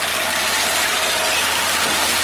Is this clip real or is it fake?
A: real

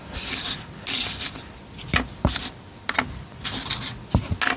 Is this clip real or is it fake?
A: real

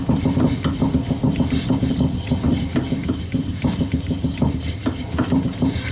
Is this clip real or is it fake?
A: real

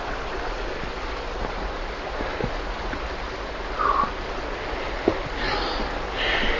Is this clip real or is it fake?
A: real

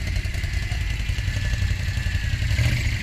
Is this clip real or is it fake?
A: real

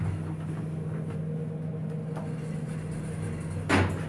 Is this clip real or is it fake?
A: real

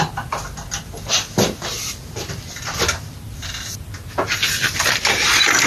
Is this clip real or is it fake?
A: real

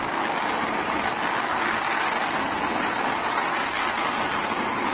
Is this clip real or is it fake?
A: real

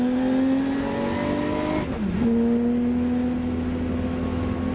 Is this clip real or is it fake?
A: real